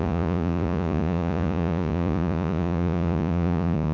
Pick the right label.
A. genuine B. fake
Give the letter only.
B